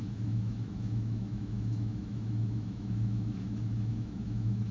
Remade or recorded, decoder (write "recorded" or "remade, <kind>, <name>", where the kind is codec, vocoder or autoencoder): remade, autoencoder, DAC-VAE